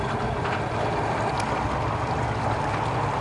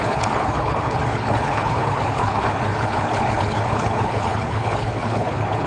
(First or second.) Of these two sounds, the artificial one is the second